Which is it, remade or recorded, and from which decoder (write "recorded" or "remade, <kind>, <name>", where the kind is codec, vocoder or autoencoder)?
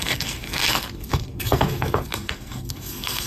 remade, codec, SNAC